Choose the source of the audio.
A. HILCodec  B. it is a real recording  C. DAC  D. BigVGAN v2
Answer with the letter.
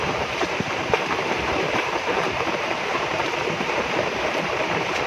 D